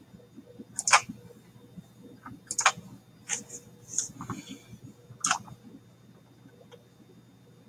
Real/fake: real